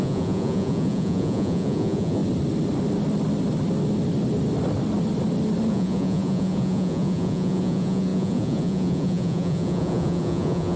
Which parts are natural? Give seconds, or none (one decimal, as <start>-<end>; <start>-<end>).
2.2-5.7